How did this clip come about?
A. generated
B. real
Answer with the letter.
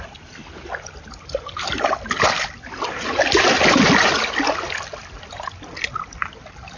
B